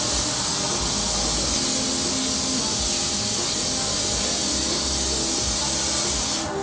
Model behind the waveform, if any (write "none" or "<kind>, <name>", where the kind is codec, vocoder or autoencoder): none